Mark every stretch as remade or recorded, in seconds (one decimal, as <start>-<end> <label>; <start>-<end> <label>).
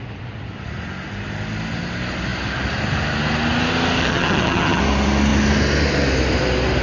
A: 0.0-4.0 recorded; 4.0-4.8 remade; 4.8-6.8 recorded